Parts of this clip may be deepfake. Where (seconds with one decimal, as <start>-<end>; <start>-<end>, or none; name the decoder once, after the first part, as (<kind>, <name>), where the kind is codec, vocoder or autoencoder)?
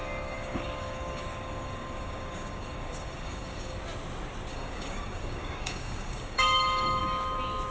0.0-3.8 (codec, DAC); 4.5-7.0